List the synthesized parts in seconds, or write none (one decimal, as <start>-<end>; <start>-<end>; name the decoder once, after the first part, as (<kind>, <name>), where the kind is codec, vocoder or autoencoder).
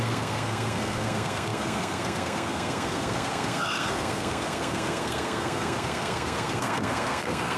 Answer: 0.0-7.6 (codec, SNAC)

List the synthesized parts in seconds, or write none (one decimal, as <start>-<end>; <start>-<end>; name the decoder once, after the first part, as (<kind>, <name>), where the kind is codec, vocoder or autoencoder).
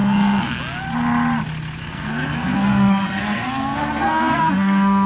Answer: 0.0-0.6 (codec, SNAC); 1.8-5.1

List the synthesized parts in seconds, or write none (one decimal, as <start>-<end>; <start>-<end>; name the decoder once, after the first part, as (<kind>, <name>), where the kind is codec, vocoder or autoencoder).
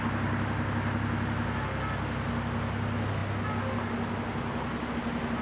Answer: none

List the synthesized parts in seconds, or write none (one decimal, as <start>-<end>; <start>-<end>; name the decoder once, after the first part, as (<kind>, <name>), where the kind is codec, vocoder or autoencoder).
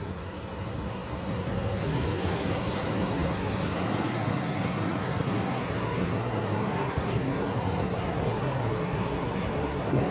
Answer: 0.0-10.1 (codec, SNAC)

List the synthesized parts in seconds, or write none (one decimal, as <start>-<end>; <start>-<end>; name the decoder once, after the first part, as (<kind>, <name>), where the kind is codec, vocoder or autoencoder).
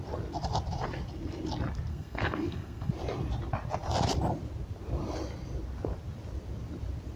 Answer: 1.9-2.9 (codec, SNAC)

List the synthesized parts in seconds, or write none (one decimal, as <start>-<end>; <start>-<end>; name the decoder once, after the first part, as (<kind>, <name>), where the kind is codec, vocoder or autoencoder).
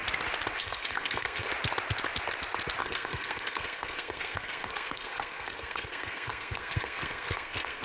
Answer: 0.6-1.5 (codec, SNAC); 2.8-7.8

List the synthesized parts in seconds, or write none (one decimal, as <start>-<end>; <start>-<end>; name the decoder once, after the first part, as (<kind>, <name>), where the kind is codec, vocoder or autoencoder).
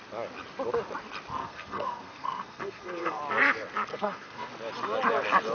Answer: 1.4-3.2 (codec, SNAC); 3.9-4.5